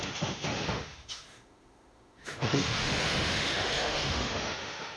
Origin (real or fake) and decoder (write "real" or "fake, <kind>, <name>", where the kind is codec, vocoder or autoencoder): fake, autoencoder, DAC-VAE